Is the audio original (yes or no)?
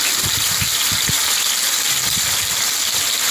yes